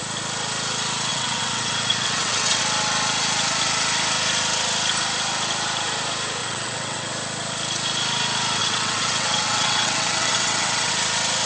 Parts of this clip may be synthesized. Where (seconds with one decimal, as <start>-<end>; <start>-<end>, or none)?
1.1-2.6; 6.4-7.1; 8.6-10.9